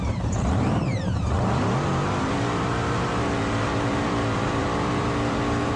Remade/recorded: remade